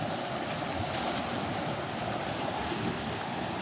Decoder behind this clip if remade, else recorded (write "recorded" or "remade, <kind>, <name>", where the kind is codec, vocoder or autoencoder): recorded